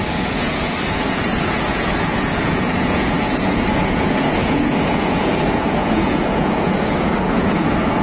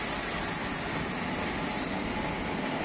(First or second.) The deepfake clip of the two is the first